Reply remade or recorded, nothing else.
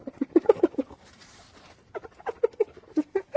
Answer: recorded